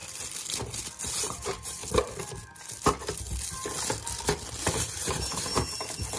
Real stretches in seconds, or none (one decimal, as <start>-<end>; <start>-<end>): 0.0-1.1; 1.8-4.6; 5.5-6.2